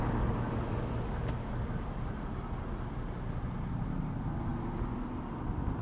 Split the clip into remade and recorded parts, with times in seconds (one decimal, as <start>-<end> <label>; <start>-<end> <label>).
0.0-5.8 recorded